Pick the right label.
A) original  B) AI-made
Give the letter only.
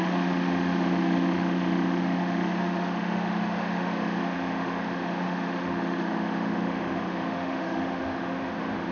B